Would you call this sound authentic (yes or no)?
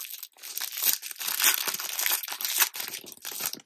yes